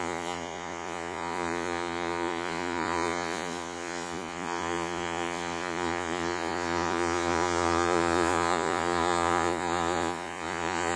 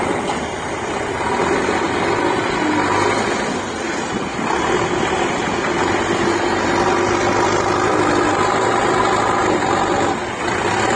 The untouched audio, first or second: second